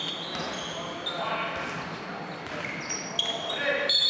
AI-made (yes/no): no